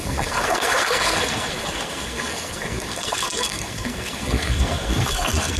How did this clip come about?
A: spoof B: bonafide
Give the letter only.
A